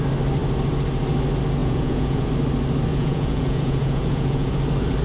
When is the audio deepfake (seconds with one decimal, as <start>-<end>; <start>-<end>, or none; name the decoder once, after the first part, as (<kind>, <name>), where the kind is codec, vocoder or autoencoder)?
1.6-2.3 (vocoder, Vocos); 2.9-4.5